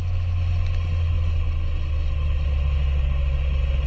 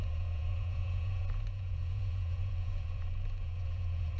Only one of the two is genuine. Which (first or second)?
first